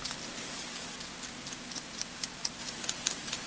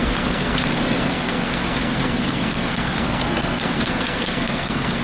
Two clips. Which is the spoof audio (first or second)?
second